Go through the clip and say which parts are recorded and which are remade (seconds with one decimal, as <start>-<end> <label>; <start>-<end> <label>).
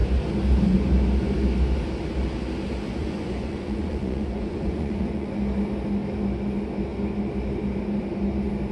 0.0-3.0 recorded; 3.0-5.4 remade; 5.4-8.7 recorded